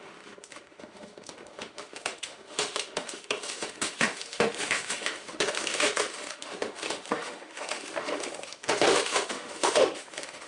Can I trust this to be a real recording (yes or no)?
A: no